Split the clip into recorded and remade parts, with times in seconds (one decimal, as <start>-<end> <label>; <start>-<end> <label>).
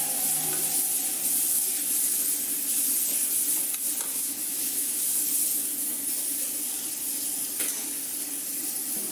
0.0-4.1 recorded; 4.1-5.0 remade; 5.0-9.1 recorded